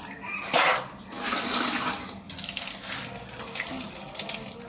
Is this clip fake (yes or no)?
no